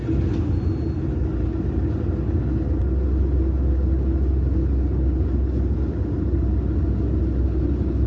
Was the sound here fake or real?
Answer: real